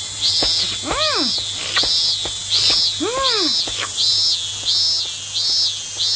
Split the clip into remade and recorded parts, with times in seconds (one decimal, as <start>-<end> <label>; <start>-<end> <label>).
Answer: 0.0-6.2 recorded